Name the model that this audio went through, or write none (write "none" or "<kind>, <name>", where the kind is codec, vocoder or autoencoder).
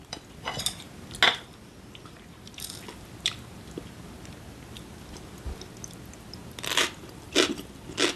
none